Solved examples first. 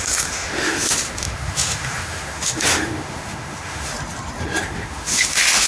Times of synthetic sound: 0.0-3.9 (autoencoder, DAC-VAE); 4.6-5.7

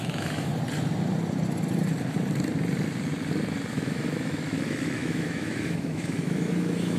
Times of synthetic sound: 0.0-0.5 (autoencoder, DAC-VAE); 3.7-7.0

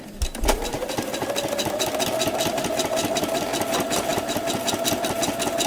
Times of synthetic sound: none

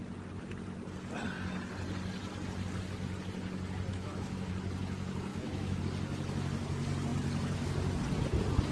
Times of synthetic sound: 3.9-4.5 (autoencoder, DAC-VAE); 5.3-5.8

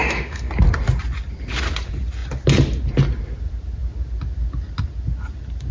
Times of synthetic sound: 0.0-0.5 (autoencoder, DAC-VAE)